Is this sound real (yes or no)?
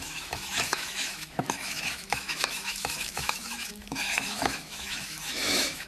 no